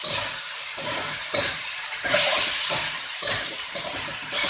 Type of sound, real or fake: fake